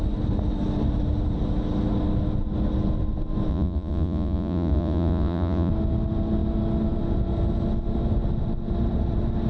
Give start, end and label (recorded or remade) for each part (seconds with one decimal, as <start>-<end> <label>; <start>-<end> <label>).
0.0-3.5 recorded; 3.5-5.7 remade; 5.7-9.5 recorded